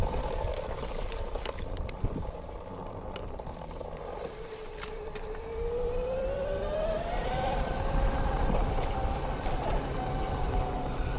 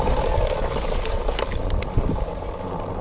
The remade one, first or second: first